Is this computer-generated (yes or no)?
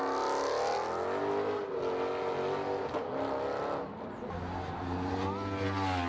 no